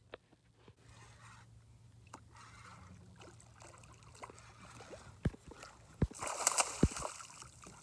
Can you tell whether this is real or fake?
real